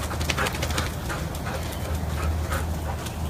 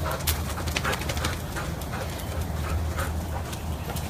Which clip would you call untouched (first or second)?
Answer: first